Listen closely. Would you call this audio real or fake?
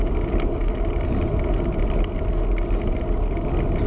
real